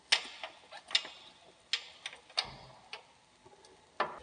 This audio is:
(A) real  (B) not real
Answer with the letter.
A